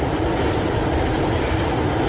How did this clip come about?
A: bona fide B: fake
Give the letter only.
A